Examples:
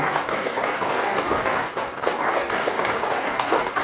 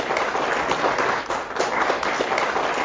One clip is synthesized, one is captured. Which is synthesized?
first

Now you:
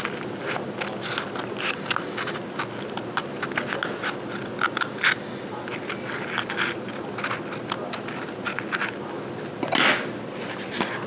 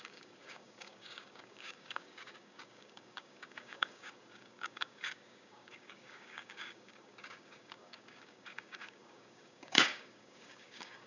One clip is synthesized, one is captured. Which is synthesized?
second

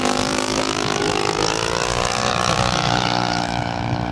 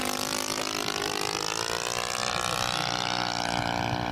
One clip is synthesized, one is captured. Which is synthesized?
first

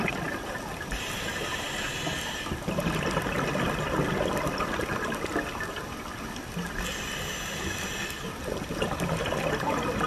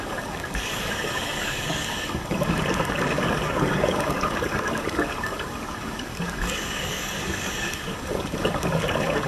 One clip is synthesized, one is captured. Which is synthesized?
second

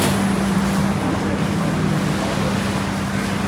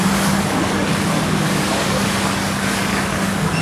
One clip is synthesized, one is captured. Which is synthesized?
second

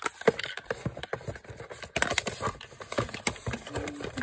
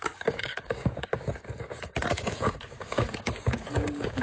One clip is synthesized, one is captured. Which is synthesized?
second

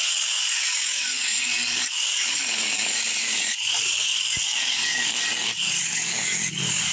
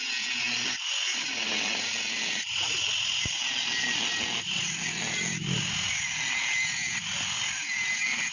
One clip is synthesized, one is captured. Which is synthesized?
first